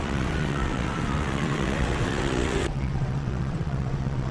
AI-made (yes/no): yes